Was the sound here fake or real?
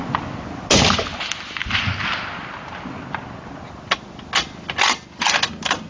real